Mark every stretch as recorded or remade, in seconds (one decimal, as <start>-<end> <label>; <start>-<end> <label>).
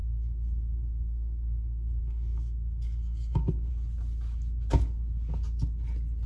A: 0.0-3.7 remade; 3.7-6.3 recorded